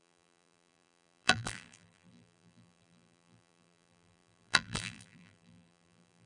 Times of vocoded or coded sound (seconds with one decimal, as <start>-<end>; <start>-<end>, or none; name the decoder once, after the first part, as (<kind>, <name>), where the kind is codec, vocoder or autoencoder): 0.0-6.3 (vocoder, BigVGAN v2)